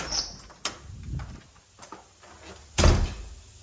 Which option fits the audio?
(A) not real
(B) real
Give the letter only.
B